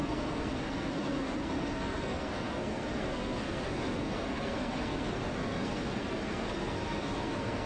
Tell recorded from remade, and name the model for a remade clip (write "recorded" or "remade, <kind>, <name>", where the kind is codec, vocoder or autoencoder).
remade, codec, SNAC